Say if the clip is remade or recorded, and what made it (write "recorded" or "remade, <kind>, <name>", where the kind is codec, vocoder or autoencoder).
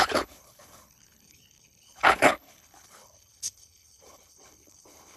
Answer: remade, codec, HILCodec